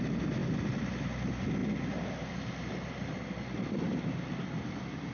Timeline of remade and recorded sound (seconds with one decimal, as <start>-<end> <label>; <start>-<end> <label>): 0.0-5.1 recorded